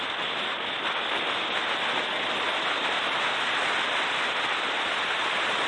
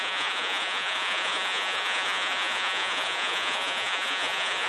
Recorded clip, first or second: first